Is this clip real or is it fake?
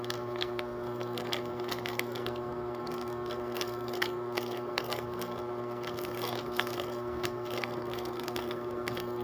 fake